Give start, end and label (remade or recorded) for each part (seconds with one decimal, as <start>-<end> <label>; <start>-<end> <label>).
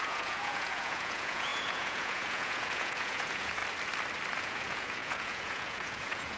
0.0-3.6 remade; 3.6-4.4 recorded; 4.4-6.4 remade